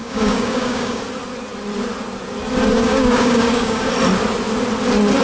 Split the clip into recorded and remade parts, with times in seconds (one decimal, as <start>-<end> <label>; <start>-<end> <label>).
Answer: 0.0-1.0 remade; 1.0-2.8 recorded; 2.8-3.9 remade; 3.9-5.2 recorded